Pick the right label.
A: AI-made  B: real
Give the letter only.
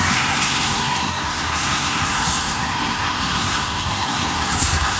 A